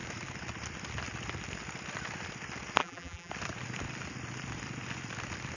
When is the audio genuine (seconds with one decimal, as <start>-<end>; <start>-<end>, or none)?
0.0-2.8; 3.3-5.6